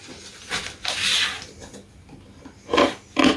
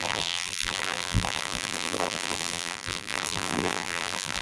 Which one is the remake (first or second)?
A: second